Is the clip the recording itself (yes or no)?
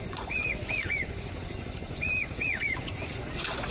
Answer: no